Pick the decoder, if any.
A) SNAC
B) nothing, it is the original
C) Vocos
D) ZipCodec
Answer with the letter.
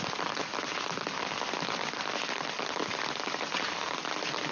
B